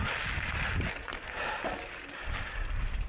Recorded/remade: recorded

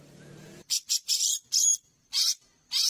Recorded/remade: remade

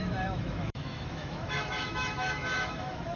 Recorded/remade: remade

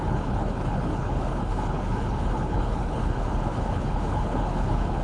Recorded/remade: remade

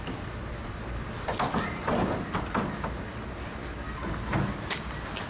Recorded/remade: recorded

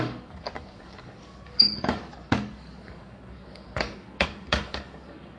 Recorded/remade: remade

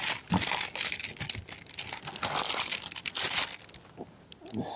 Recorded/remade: recorded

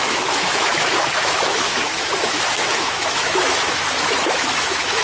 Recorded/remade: remade